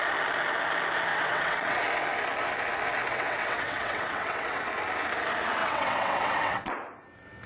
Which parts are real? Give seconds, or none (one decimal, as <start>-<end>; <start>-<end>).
0.0-1.1; 1.8-3.1; 4.7-5.6; 6.7-7.5